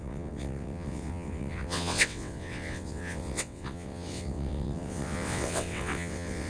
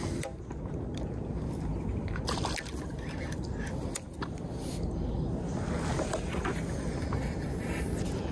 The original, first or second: second